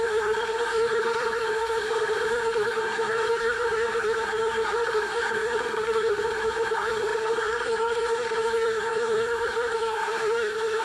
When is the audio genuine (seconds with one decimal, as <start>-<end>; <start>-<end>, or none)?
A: none